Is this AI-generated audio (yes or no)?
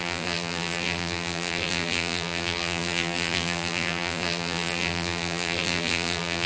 yes